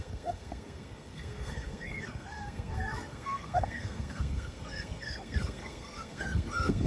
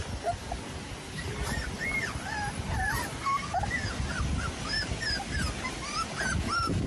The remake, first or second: first